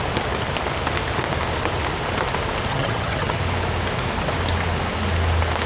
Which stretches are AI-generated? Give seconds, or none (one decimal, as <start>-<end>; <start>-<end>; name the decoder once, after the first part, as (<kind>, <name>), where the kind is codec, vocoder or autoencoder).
2.7-3.4 (vocoder, HiFi-GAN)